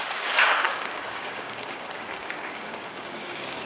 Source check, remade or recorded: remade